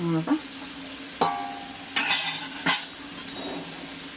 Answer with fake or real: real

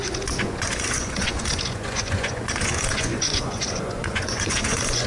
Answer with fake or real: fake